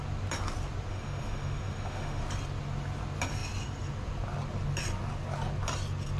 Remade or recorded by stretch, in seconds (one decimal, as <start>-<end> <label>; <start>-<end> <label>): 0.0-0.9 recorded; 0.9-2.2 remade; 2.2-6.2 recorded